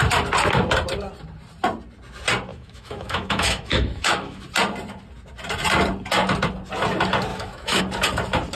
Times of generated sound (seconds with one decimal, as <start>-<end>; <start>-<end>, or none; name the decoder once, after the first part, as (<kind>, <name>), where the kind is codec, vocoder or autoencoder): 2.5-4.4 (autoencoder, DAC-VAE); 7.3-7.8